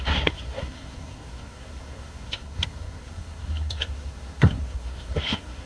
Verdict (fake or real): fake